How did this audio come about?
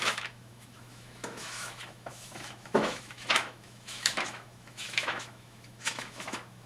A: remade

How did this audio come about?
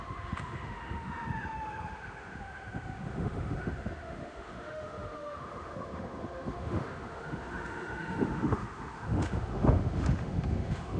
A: remade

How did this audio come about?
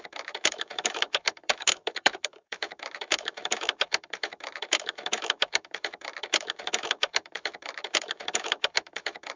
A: remade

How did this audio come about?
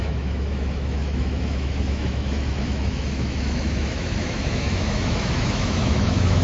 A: remade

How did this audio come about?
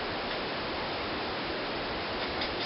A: recorded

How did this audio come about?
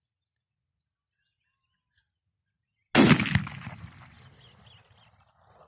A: recorded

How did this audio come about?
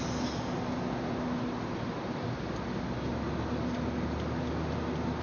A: recorded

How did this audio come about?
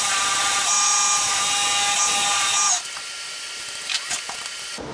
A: recorded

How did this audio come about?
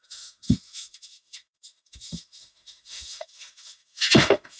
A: remade